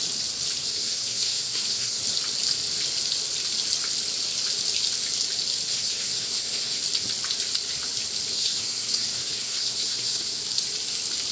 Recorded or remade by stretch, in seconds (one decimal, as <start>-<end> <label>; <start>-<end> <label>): 0.0-0.6 recorded; 0.6-2.0 remade; 2.0-5.7 recorded; 5.7-6.8 remade; 6.8-8.3 recorded; 8.3-10.4 remade; 10.4-11.3 recorded